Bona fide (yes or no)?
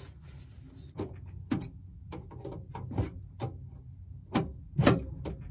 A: yes